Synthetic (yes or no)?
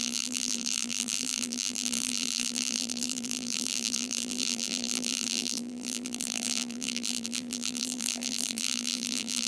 yes